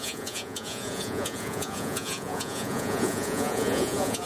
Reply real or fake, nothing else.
fake